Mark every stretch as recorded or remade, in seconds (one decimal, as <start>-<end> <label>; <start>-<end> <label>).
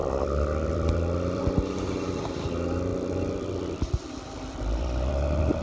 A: 0.0-1.4 remade; 1.4-2.9 recorded; 2.9-5.1 remade; 5.1-5.6 recorded